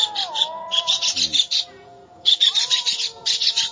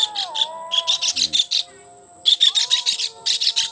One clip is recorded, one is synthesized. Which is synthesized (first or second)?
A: first